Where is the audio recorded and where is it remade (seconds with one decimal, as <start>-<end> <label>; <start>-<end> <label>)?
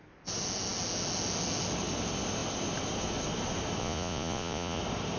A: 0.0-3.8 recorded; 3.8-4.8 remade; 4.8-5.2 recorded